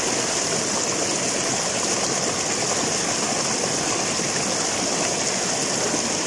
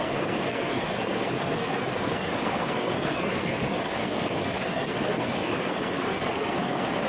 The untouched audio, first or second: first